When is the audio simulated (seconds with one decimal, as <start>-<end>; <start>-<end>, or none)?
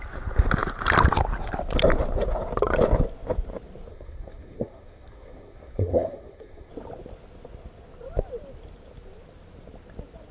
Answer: 3.9-6.7